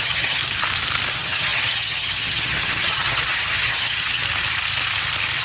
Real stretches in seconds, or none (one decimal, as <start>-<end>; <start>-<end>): 0.4-1.1; 4.2-5.4